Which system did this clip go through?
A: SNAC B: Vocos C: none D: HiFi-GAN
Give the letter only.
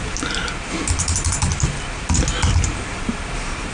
C